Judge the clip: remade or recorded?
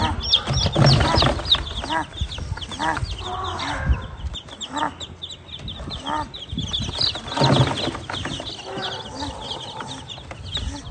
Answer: recorded